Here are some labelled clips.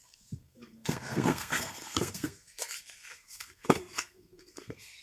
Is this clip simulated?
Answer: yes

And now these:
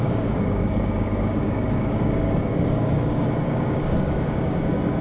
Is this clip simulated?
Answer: yes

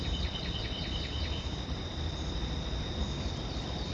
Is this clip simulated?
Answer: yes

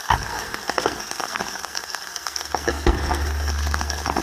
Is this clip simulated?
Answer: yes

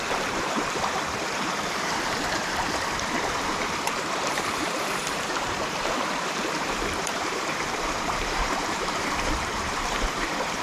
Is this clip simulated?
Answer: yes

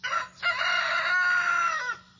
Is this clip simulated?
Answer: no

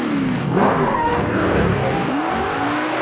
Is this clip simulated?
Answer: yes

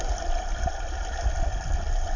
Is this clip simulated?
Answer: no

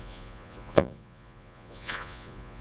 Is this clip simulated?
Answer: yes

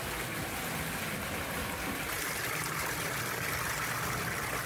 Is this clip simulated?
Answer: no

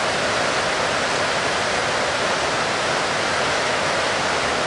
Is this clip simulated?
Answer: no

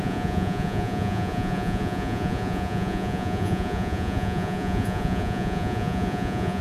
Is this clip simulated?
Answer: yes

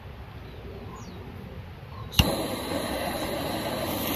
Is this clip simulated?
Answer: no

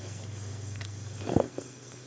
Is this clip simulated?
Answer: yes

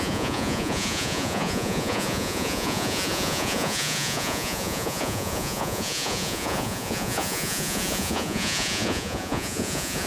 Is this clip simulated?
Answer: yes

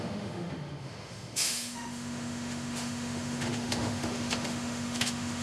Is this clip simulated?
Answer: yes